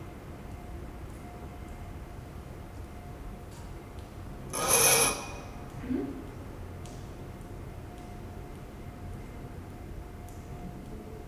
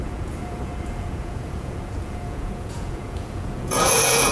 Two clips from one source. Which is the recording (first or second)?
first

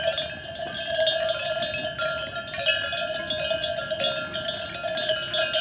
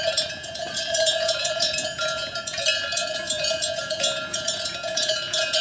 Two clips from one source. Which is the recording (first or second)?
first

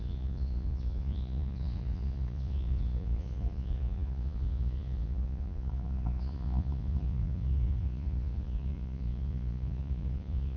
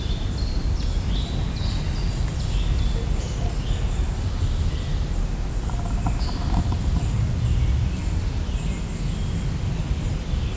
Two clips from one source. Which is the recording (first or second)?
second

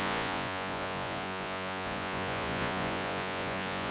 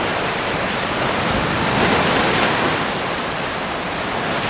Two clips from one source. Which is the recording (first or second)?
second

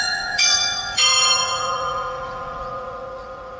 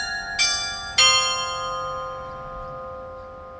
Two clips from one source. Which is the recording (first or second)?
second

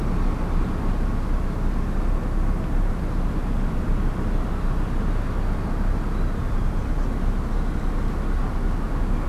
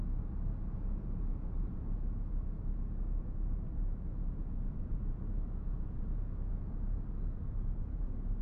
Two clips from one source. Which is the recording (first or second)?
first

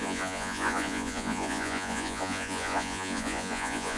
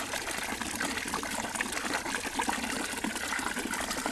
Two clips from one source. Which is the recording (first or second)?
second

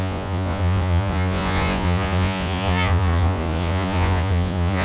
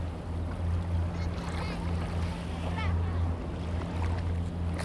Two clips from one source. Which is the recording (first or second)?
second